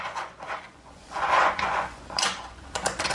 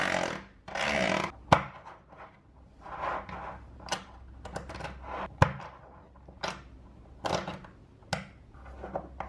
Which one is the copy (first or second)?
first